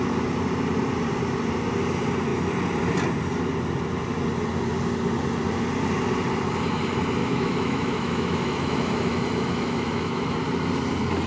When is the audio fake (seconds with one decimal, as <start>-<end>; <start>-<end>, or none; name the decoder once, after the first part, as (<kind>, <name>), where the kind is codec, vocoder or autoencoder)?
7.2-10.4 (autoencoder, DAC-VAE)